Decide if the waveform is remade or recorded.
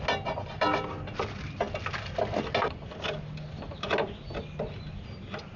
recorded